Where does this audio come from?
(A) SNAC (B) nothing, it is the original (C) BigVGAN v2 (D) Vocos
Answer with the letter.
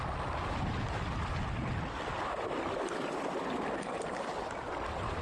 B